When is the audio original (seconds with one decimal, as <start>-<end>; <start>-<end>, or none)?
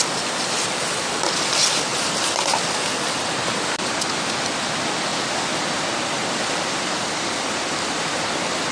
0.0-1.9; 2.7-5.1